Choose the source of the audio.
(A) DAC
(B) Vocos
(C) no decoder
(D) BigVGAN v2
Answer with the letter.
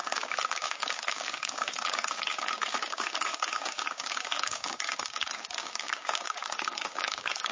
A